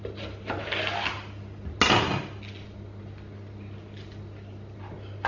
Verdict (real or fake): real